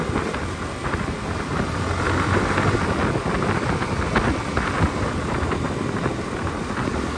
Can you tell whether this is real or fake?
real